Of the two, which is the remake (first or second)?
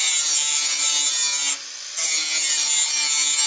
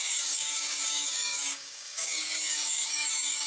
second